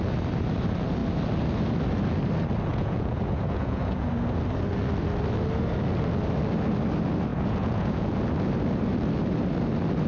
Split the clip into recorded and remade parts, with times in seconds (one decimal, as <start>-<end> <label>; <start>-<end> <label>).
0.0-2.7 recorded; 2.7-4.1 remade; 4.1-7.3 recorded; 7.3-8.2 remade; 8.2-10.1 recorded